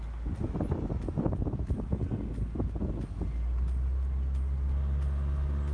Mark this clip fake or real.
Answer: real